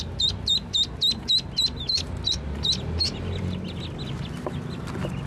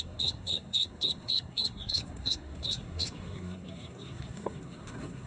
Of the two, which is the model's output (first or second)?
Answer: second